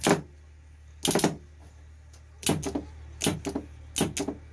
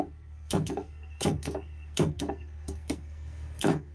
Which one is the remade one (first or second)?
second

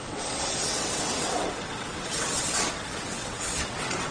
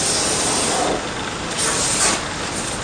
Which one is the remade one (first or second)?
first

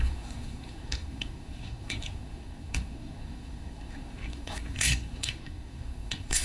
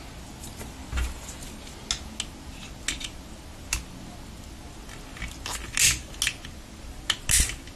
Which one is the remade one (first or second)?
first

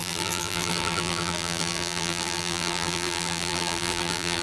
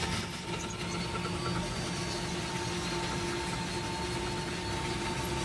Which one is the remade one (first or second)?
first